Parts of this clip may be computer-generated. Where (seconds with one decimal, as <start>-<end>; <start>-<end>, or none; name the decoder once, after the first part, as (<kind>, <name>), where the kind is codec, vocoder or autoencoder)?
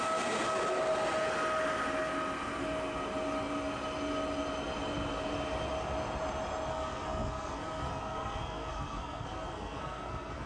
6.7-10.5 (codec, SNAC)